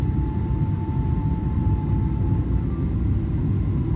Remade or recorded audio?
recorded